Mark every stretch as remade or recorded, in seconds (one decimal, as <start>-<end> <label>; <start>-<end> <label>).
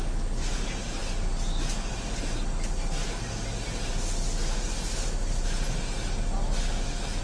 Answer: 0.0-7.2 recorded